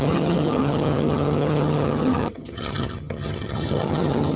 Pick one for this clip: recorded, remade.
remade